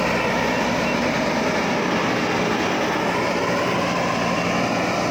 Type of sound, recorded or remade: recorded